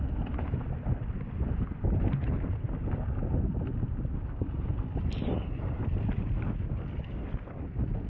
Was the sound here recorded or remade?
recorded